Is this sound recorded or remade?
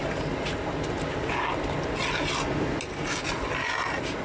recorded